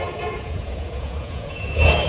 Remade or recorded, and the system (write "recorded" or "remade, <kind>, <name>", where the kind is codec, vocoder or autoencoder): remade, vocoder, Vocos